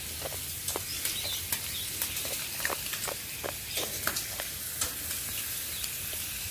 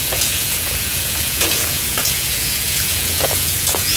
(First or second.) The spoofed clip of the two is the second